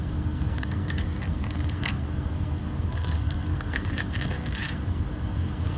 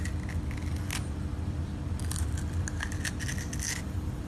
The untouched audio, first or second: second